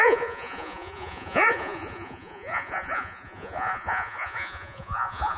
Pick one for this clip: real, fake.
fake